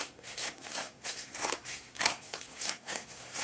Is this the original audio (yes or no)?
no